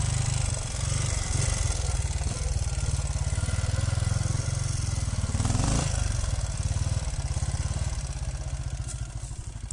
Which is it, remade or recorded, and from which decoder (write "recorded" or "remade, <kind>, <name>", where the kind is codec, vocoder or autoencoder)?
remade, vocoder, BigVGAN v2